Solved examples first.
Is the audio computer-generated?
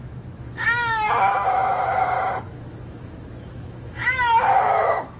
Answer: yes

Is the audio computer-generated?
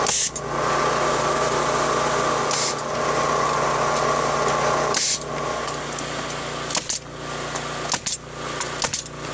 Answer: no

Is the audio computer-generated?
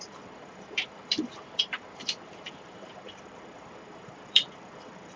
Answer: yes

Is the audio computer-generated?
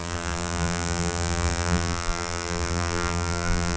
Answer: yes